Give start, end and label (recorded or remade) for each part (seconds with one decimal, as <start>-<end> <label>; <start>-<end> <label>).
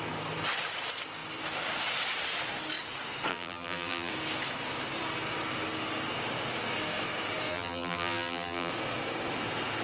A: 0.0-3.3 recorded; 3.3-4.1 remade; 4.1-7.5 recorded; 7.5-8.7 remade; 8.7-9.8 recorded